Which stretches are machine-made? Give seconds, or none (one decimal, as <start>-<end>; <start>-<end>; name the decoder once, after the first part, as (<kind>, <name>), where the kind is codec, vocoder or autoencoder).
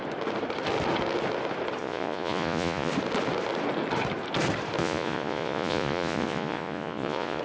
1.8-2.9 (vocoder, Vocos); 4.8-7.4